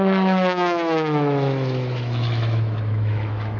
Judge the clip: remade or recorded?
remade